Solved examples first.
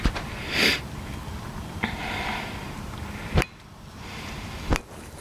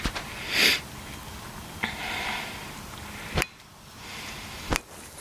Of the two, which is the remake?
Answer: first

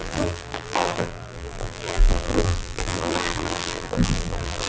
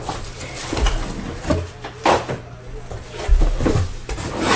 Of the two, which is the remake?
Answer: first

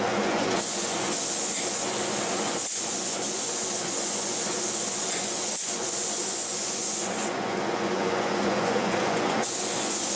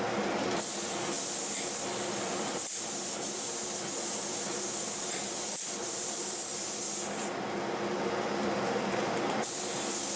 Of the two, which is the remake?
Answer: first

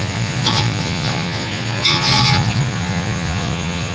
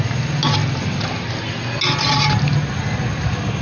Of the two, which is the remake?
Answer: first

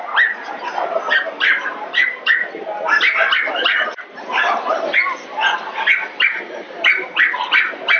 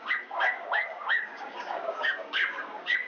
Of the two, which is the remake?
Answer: second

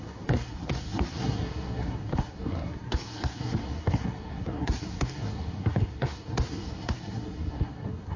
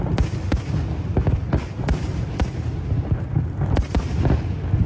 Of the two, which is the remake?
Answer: first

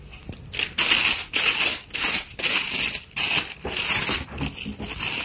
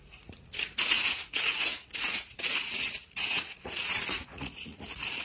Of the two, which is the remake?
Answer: second